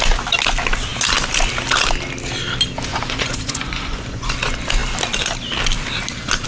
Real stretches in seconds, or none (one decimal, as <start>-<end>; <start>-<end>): 0.0-2.9; 4.3-6.5